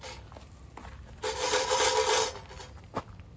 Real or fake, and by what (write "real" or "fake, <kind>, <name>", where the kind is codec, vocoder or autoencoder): real